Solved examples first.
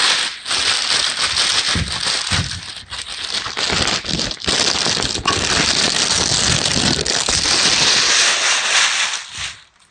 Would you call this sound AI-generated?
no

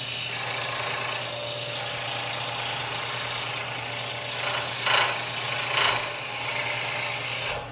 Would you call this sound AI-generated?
no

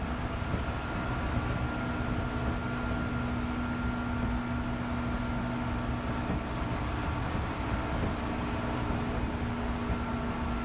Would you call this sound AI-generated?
no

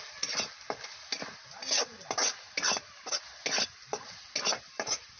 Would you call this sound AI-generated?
no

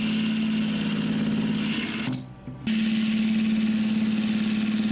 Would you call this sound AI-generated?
no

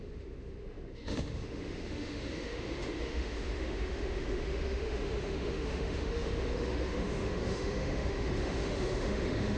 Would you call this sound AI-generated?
yes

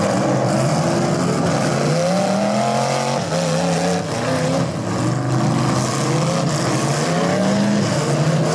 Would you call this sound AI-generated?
no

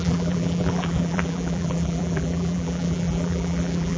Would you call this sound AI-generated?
yes